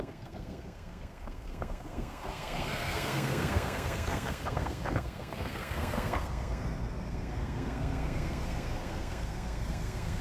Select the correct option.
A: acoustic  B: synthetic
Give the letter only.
B